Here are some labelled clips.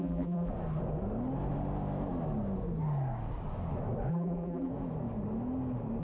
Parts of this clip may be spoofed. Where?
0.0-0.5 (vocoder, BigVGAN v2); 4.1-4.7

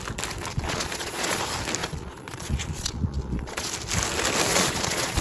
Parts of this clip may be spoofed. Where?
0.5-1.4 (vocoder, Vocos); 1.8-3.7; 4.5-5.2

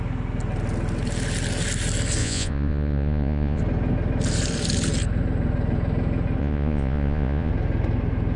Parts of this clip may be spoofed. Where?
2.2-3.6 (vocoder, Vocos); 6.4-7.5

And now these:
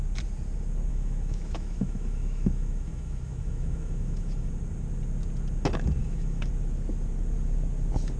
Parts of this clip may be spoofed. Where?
0.9-4.5 (autoencoder, DAC-VAE); 6.0-6.5

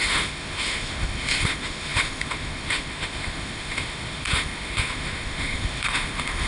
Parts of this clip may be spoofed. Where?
0.0-6.5 (autoencoder, DAC-VAE)

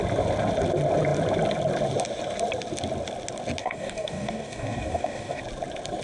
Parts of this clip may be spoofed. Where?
3.6-5.4 (codec, DAC)